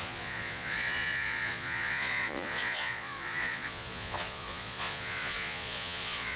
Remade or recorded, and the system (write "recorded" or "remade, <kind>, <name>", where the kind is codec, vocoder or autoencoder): remade, vocoder, Vocos